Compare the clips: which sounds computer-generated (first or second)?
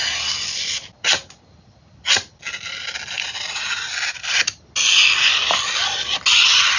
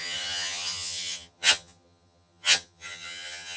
second